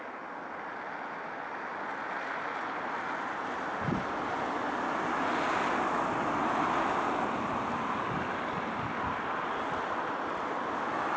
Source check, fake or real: real